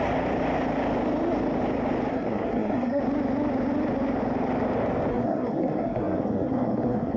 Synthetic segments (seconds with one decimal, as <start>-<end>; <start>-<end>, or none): 2.1-3.0; 5.1-7.2